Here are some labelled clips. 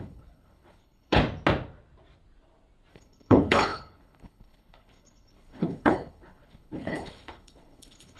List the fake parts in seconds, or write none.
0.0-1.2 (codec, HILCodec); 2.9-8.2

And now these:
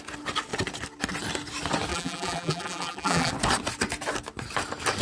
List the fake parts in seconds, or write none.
1.9-3.3 (vocoder, BigVGAN v2)